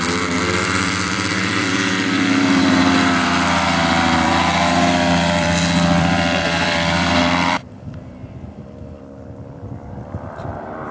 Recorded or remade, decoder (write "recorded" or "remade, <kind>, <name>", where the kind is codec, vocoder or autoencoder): remade, vocoder, BigVGAN v2